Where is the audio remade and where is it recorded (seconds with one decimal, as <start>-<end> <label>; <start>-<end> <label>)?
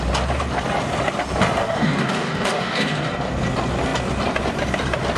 0.0-1.6 recorded; 1.6-3.1 remade; 3.1-5.2 recorded